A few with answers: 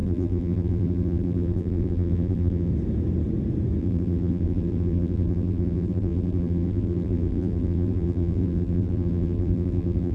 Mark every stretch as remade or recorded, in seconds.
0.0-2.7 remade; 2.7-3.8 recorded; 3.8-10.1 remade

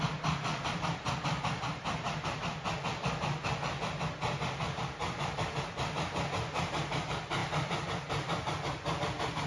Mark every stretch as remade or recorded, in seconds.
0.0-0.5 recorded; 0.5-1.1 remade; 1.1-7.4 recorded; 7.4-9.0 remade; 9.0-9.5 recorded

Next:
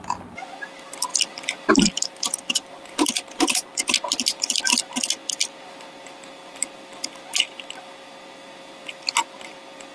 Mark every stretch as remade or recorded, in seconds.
0.0-9.9 remade

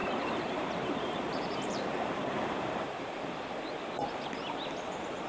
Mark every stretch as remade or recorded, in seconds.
0.0-3.2 remade; 3.2-5.3 recorded

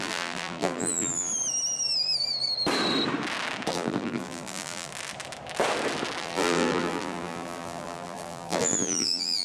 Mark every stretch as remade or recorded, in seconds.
0.0-1.3 remade; 1.3-3.7 recorded; 3.7-4.9 remade; 4.9-6.2 recorded; 6.2-9.4 remade

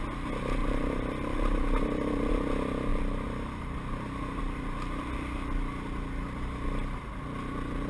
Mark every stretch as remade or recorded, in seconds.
0.0-0.6 recorded; 0.6-2.3 remade; 2.3-2.9 recorded; 2.9-4.4 remade; 4.4-7.9 recorded

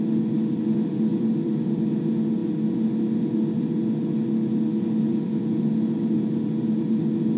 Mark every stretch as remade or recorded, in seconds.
0.0-1.1 recorded; 1.1-1.8 remade; 1.8-7.4 recorded